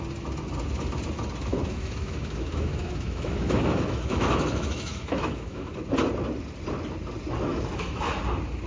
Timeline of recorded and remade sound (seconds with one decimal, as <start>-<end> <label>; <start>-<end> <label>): 0.0-1.5 recorded; 1.5-5.7 remade; 5.7-7.5 recorded; 7.5-8.2 remade; 8.2-8.7 recorded